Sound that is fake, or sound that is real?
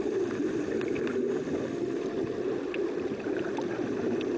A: real